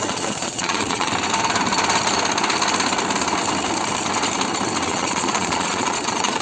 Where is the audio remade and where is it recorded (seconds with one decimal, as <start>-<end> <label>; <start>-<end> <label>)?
0.0-1.1 remade; 1.1-4.9 recorded; 4.9-6.4 remade